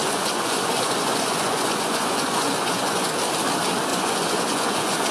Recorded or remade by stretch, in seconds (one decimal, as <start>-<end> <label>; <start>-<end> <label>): 0.0-3.1 remade; 3.1-3.9 recorded; 3.9-5.1 remade